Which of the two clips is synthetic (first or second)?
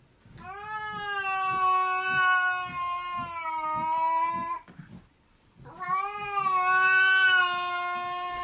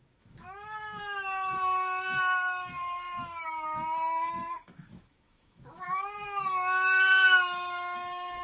second